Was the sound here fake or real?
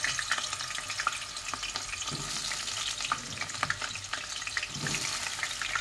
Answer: real